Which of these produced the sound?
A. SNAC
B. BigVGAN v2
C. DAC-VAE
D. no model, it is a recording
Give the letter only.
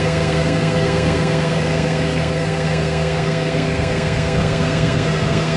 A